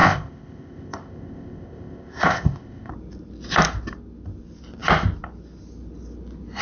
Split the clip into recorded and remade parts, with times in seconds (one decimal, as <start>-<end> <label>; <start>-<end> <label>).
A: 0.0-2.9 remade; 2.9-6.6 recorded